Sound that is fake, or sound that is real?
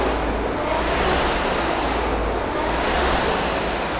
real